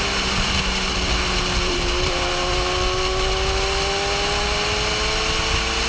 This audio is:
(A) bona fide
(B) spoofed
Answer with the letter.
A